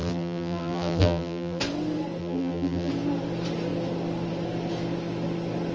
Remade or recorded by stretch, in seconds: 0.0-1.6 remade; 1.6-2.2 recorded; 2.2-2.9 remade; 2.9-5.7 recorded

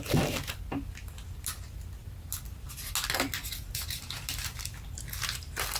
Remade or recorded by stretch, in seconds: 0.0-5.8 recorded

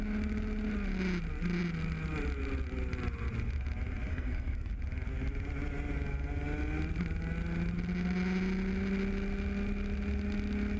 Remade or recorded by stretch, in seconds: 0.0-4.1 recorded; 4.1-4.7 remade; 4.7-10.8 recorded

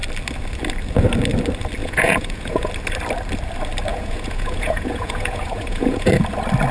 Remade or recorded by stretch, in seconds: 0.0-1.8 recorded; 1.8-2.7 remade; 2.7-3.9 recorded; 3.9-6.1 remade; 6.1-6.7 recorded

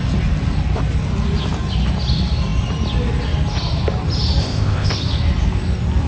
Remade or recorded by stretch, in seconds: 0.0-4.4 recorded; 4.4-5.0 remade; 5.0-6.1 recorded

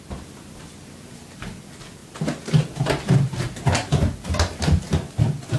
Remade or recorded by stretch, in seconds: 0.0-5.6 recorded

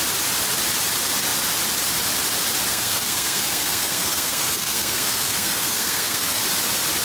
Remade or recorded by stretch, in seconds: 0.0-2.7 recorded; 2.7-6.4 remade; 6.4-7.0 recorded

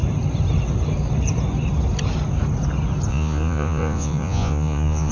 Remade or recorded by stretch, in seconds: 0.0-3.1 recorded; 3.1-5.1 remade